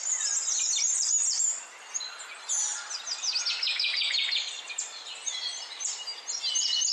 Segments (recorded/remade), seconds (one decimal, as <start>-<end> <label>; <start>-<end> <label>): 0.0-6.9 recorded